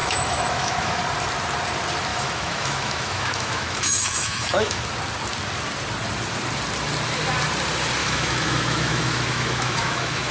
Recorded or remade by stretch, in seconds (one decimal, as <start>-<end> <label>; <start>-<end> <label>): 0.0-1.0 remade; 1.0-2.1 recorded; 2.1-4.8 remade; 4.8-8.0 recorded; 8.0-10.3 remade